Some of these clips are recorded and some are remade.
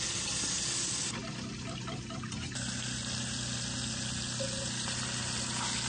recorded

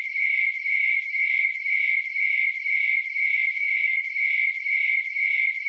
remade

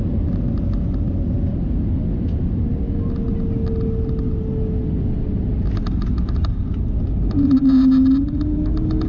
recorded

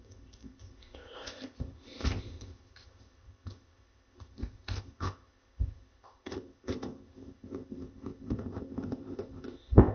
remade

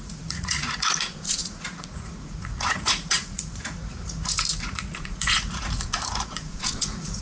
remade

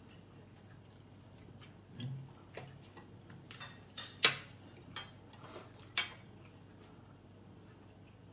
recorded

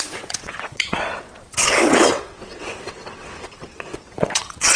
remade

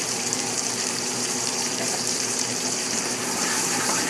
remade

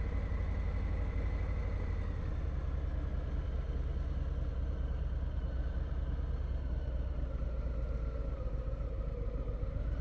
recorded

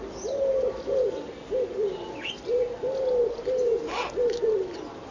recorded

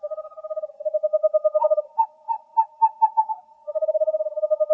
recorded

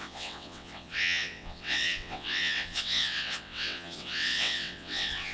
remade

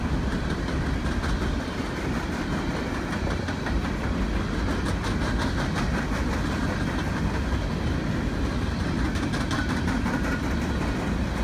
recorded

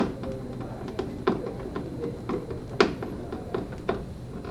recorded